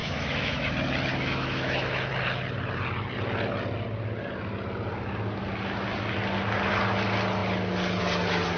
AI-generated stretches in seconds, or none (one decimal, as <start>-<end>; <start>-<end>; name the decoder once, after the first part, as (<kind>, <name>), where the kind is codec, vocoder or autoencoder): 0.0-0.7 (autoencoder, DAC-VAE); 1.1-2.1